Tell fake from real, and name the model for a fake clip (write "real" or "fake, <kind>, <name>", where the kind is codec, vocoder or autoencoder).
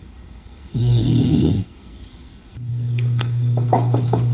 fake, codec, SNAC